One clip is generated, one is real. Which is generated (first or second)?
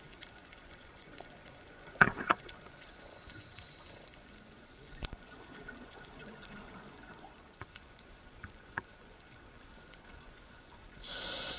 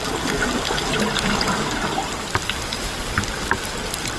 first